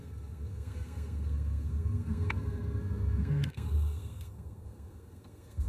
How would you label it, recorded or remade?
remade